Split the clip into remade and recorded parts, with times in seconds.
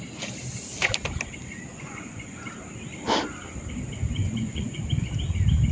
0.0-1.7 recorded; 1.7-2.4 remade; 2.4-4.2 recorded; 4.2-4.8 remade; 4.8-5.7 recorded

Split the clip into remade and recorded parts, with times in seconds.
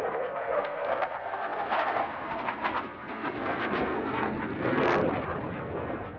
0.0-5.0 remade; 5.0-5.6 recorded; 5.6-6.2 remade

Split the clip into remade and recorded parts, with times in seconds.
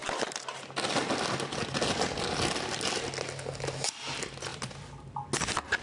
0.0-4.5 recorded; 4.5-5.1 remade; 5.1-5.8 recorded